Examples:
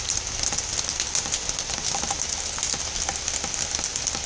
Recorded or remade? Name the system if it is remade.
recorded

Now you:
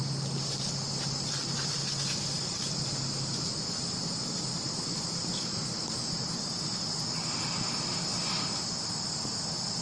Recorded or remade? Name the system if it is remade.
recorded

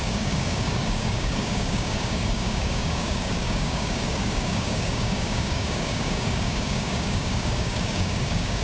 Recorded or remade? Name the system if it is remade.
remade, codec, DAC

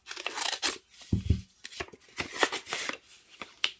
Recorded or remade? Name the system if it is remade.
recorded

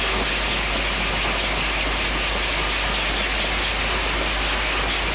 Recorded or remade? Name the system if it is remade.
recorded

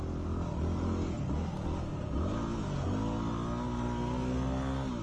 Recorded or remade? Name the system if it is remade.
recorded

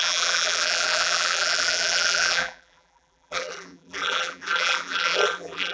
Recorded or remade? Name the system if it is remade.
remade, vocoder, BigVGAN v2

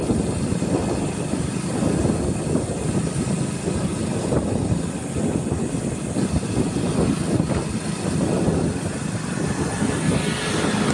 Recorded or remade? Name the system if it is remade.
recorded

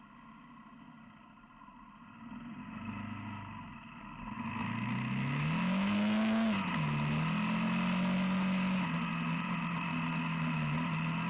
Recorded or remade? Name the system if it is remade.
recorded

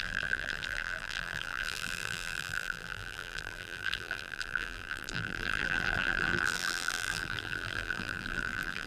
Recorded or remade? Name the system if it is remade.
remade, vocoder, BigVGAN v2